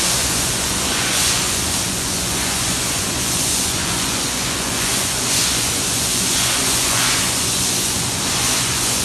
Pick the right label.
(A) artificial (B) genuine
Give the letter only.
A